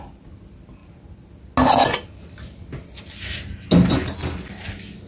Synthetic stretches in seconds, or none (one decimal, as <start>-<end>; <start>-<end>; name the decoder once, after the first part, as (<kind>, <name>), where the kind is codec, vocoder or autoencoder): none